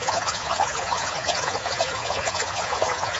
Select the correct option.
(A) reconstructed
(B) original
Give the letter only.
A